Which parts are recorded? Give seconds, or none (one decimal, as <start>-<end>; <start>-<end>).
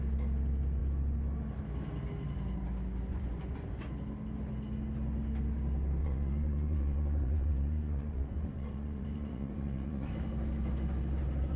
0.0-3.1; 3.8-6.0; 10.1-11.6